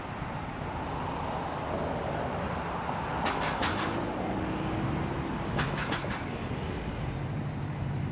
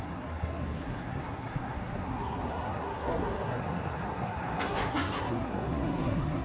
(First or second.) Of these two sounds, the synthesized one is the second